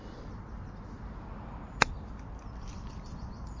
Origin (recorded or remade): recorded